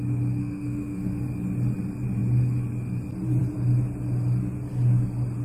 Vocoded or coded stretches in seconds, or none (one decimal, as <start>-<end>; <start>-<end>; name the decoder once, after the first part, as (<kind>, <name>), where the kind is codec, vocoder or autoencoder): 0.4-1.2 (autoencoder, DAC-VAE)